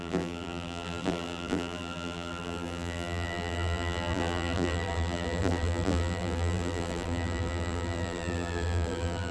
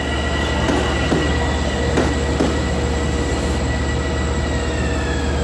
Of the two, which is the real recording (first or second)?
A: second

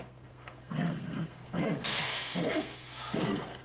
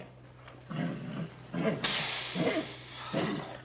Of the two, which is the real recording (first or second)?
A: second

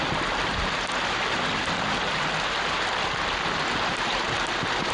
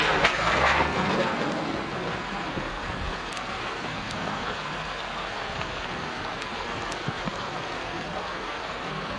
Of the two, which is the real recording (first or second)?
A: first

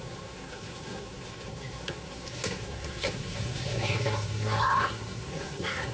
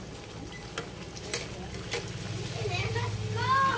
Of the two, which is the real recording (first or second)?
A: second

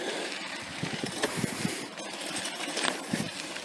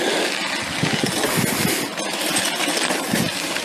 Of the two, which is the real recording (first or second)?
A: second